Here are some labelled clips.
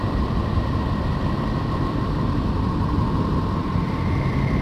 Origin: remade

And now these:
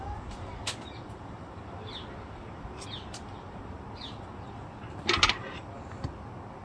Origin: recorded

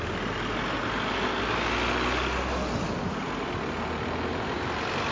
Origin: recorded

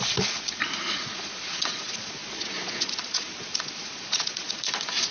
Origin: remade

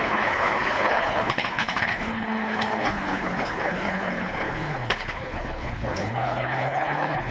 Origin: remade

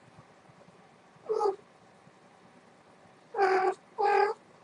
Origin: remade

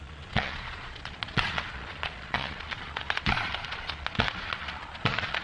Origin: remade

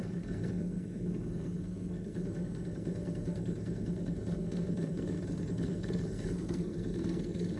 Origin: remade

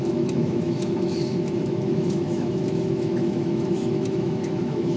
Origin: remade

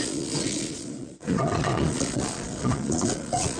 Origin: remade